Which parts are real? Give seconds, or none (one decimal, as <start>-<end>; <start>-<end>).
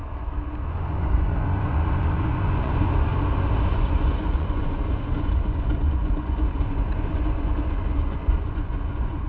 0.0-0.7; 3.1-3.7